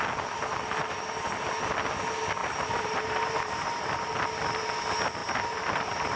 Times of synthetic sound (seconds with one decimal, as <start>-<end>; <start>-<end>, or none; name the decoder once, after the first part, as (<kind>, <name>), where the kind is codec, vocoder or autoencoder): 2.4-4.1 (vocoder, BigVGAN v2); 5.2-6.2